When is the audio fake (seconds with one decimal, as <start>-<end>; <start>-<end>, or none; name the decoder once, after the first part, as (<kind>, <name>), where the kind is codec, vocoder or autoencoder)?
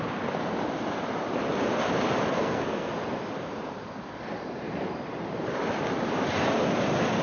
2.3-2.9 (codec, SNAC)